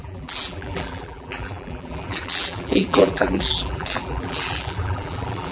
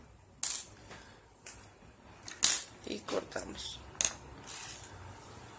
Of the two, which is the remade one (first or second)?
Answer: first